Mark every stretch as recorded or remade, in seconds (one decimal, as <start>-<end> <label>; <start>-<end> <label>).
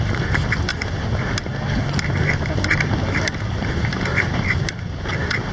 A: 0.0-4.1 recorded; 4.1-4.7 remade; 4.7-5.5 recorded